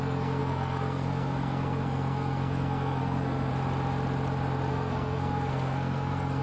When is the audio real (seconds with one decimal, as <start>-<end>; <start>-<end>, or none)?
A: 3.5-4.7